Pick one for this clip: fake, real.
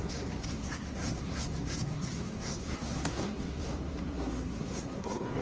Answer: fake